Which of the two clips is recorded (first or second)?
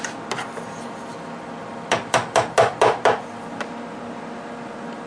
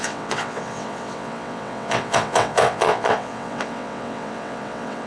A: first